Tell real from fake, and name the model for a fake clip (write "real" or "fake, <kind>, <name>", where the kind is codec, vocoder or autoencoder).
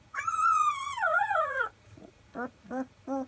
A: fake, vocoder, Vocos